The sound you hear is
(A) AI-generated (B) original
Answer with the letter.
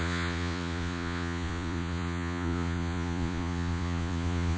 A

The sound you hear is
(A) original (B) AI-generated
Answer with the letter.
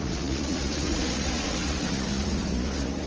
B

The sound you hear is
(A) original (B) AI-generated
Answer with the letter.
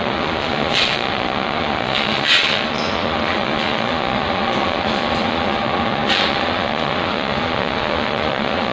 B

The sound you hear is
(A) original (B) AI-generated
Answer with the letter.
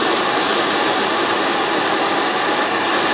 A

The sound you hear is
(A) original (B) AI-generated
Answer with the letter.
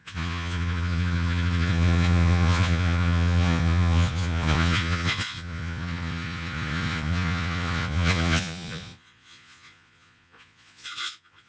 B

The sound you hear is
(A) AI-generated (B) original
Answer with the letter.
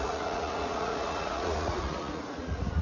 A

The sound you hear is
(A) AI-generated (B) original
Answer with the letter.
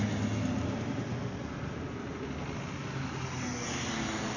B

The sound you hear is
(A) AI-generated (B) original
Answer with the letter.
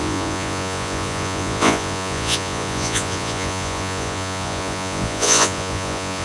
A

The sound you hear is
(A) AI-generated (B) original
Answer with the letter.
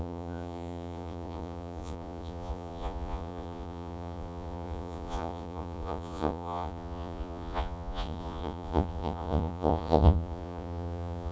A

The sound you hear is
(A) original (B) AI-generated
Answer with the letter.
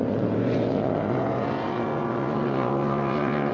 B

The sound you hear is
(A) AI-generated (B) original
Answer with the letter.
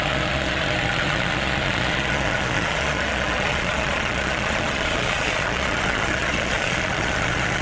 A